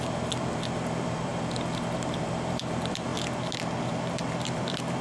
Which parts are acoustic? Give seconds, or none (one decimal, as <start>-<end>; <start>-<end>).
1.3-2.2; 3.1-3.9